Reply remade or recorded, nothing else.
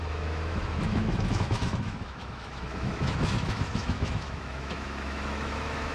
remade